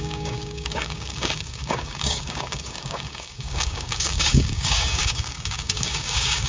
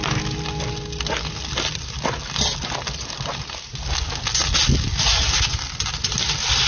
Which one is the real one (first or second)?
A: second